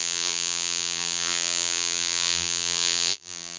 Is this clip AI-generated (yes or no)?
yes